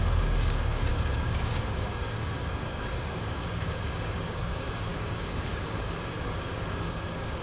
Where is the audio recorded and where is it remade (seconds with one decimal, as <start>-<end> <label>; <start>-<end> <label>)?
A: 0.0-7.4 remade